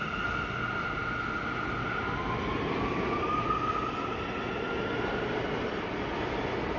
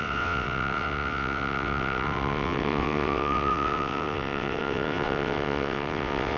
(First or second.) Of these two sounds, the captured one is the first